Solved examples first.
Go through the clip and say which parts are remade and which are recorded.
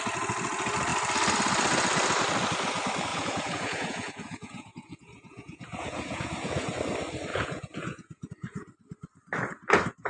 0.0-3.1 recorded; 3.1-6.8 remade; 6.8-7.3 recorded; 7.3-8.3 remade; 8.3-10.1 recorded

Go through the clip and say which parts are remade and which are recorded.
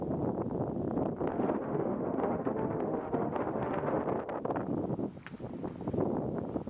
0.0-1.3 recorded; 1.3-4.0 remade; 4.0-6.7 recorded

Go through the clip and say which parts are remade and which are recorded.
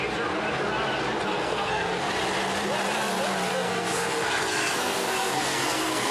0.0-1.3 recorded; 1.3-2.1 remade; 2.1-3.5 recorded; 3.5-6.1 remade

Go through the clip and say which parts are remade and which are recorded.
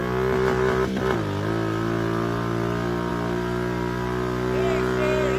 0.0-5.4 recorded